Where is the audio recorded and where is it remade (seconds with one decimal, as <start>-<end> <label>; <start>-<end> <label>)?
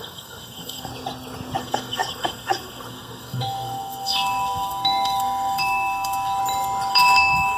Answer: 0.0-0.9 remade; 0.9-1.6 recorded; 1.6-6.4 remade; 6.4-6.9 recorded; 6.9-7.6 remade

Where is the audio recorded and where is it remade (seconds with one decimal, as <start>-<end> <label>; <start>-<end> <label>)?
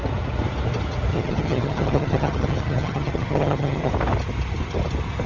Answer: 0.0-1.1 recorded; 1.1-3.9 remade; 3.9-5.3 recorded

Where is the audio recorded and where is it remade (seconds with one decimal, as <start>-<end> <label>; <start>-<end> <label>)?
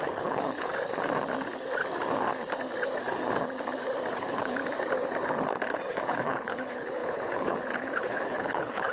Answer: 0.0-0.7 remade; 0.7-4.1 recorded; 4.1-4.6 remade; 4.6-5.9 recorded; 5.9-8.9 remade